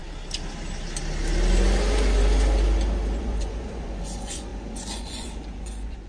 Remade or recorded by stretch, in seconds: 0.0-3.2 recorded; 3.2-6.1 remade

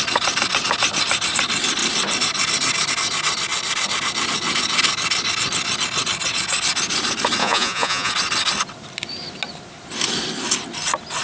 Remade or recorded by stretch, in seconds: 0.0-7.4 recorded; 7.4-8.1 remade; 8.1-11.2 recorded